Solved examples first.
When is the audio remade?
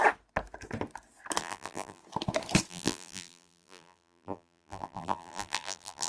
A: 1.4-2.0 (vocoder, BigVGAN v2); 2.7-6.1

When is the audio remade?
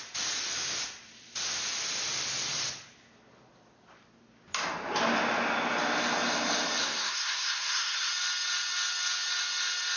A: 6.8-8.1 (codec, SNAC)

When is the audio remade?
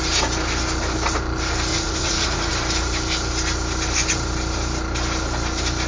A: 1.7-2.5 (vocoder, Vocos)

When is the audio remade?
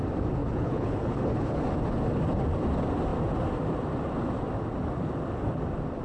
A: 0.4-1.6 (codec, HILCodec)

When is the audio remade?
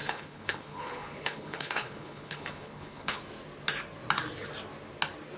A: 0.0-3.2 (codec, HILCodec)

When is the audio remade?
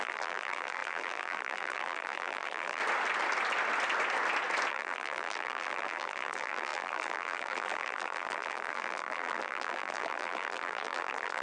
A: 0.0-2.8 (vocoder, BigVGAN v2); 4.7-11.4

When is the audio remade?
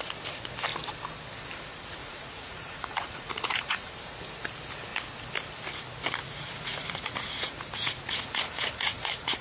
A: 2.0-3.9 (vocoder, Vocos); 6.2-9.4